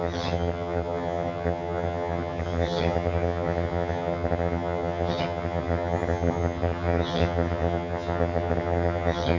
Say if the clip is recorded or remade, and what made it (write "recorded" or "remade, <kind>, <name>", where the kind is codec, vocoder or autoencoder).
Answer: remade, vocoder, HiFi-GAN